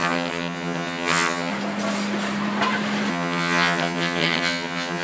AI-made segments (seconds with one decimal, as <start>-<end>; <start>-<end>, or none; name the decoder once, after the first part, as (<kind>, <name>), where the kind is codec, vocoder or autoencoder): 0.0-1.5 (vocoder, HiFi-GAN); 3.1-5.0